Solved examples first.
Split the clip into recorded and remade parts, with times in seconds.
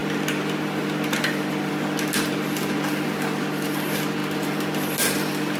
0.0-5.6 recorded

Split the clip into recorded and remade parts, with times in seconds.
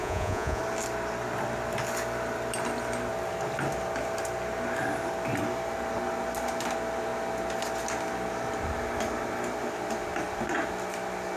0.0-0.6 remade; 0.6-11.4 recorded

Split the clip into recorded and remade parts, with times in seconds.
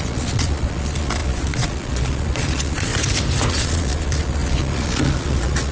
0.0-2.9 remade; 2.9-3.5 recorded; 3.5-5.7 remade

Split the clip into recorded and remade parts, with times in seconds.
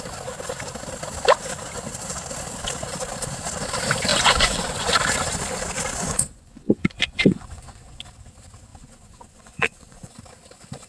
0.0-4.1 recorded; 4.1-4.9 remade; 4.9-6.0 recorded; 6.0-8.0 remade; 8.0-8.7 recorded; 8.7-10.1 remade; 10.1-10.9 recorded